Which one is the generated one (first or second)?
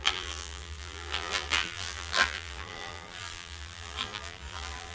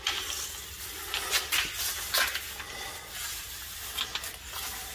first